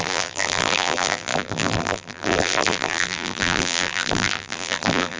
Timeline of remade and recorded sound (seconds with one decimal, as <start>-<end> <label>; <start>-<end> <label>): 0.0-5.2 remade